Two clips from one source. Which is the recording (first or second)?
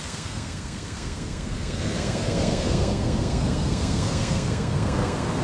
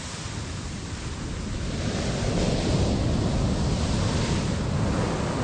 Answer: second